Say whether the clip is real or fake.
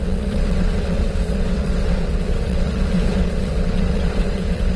fake